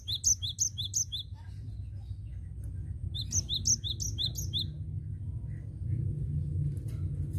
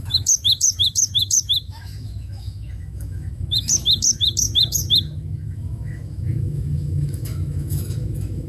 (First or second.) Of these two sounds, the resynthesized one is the second